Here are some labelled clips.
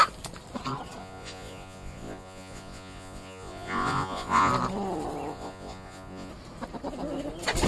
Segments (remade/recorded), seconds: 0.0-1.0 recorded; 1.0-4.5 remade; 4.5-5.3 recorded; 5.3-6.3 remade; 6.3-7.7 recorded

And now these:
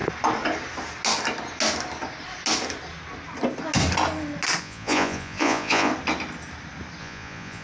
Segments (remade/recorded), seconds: 0.0-4.6 recorded; 4.6-5.9 remade; 5.9-7.0 recorded; 7.0-7.6 remade

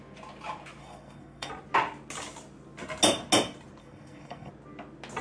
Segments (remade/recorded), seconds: 0.0-0.8 recorded; 0.8-1.5 remade; 1.5-3.8 recorded; 3.8-4.5 remade; 4.5-5.2 recorded

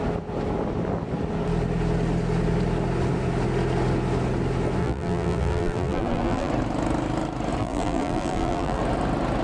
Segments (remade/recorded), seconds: 0.0-4.8 recorded; 4.8-6.5 remade; 6.5-7.6 recorded; 7.6-8.8 remade; 8.8-9.4 recorded

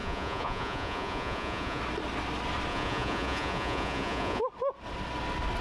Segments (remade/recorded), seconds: 0.0-1.8 remade; 1.8-2.7 recorded; 2.7-4.4 remade; 4.4-5.6 recorded